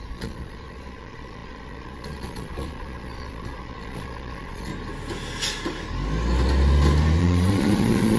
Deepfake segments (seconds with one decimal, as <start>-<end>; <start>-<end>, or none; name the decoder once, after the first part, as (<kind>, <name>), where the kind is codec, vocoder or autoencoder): 0.0-4.7 (vocoder, Vocos); 7.2-8.2